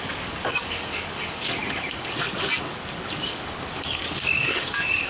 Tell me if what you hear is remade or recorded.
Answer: remade